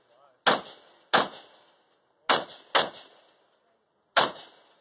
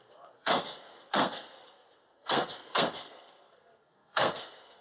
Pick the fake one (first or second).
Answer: second